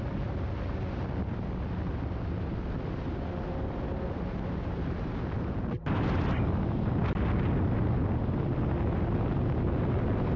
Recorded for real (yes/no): yes